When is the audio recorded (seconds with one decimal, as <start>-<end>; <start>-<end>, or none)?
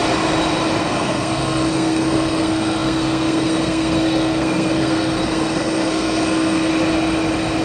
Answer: 0.0-0.8; 6.7-7.6